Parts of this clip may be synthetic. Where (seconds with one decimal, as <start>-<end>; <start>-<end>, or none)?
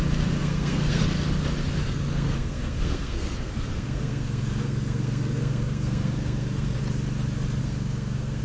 0.4-1.0; 1.8-6.8; 7.6-8.4